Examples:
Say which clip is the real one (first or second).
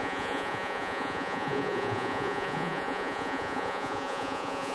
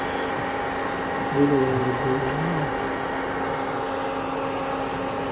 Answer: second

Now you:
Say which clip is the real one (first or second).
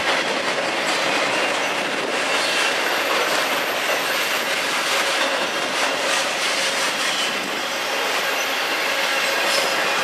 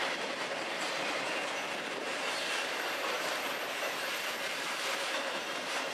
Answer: first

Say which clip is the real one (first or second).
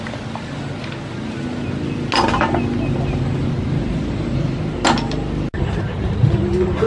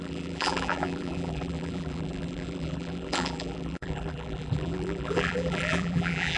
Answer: first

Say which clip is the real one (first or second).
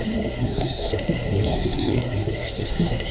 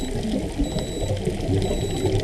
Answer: second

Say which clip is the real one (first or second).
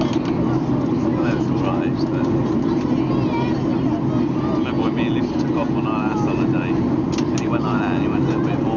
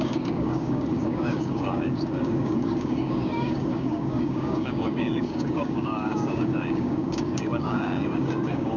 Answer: first